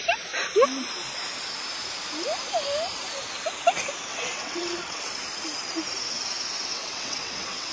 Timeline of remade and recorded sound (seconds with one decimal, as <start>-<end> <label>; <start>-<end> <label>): 0.0-4.1 recorded; 4.1-5.1 remade; 5.1-6.7 recorded; 6.7-7.7 remade